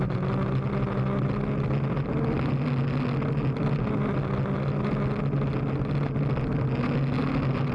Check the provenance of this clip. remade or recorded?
recorded